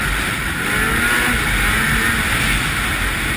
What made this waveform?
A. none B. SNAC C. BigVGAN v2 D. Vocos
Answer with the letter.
A